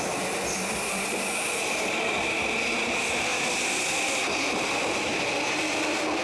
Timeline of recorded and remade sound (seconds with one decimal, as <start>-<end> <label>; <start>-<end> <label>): 0.0-6.2 recorded